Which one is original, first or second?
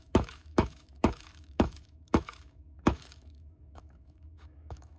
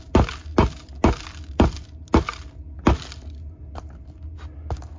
second